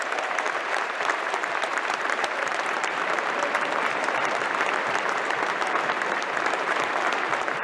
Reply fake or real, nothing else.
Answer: fake